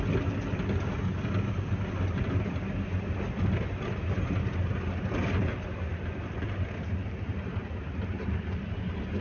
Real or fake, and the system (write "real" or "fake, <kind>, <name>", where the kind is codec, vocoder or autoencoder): real